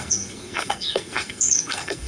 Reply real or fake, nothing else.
fake